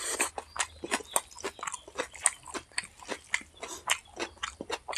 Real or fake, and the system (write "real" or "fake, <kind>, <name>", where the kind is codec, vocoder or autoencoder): real